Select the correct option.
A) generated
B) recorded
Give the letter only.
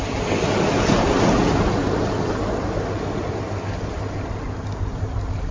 B